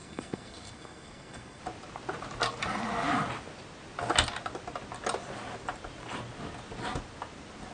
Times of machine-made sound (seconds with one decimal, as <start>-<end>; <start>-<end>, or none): 0.0-1.6